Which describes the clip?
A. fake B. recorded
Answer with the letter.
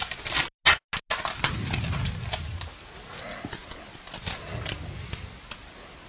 B